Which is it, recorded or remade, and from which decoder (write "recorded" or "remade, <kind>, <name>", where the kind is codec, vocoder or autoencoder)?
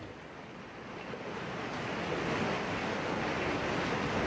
recorded